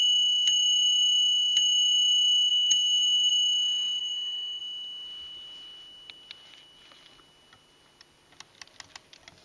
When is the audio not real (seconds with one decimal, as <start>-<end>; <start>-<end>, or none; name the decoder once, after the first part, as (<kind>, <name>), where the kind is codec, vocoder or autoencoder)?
2.5-3.3 (codec, SNAC); 4.0-4.6